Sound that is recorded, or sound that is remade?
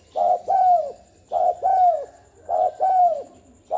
recorded